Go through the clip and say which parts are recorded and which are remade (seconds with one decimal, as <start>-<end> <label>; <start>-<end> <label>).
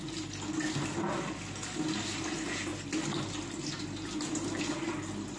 0.0-5.4 recorded